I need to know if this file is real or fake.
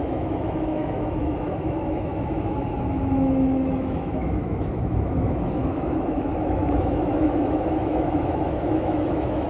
fake